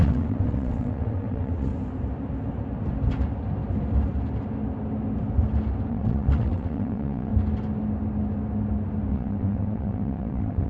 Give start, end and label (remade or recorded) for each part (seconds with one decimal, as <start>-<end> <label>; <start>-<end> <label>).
0.0-1.7 remade; 1.7-5.9 recorded; 5.9-7.3 remade; 7.3-9.1 recorded; 9.1-10.7 remade